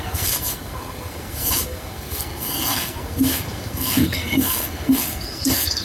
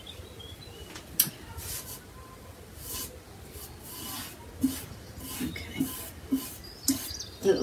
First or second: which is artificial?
first